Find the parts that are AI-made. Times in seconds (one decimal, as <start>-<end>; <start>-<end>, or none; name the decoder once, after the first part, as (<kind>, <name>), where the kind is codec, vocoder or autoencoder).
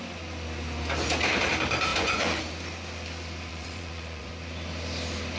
1.9-2.4 (vocoder, Vocos); 3.5-4.3